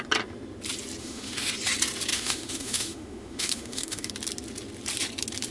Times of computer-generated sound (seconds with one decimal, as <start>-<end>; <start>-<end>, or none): 1.0-1.5; 2.1-4.1